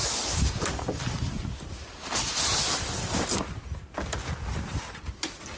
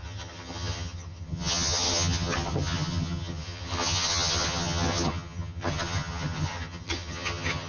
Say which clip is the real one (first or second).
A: first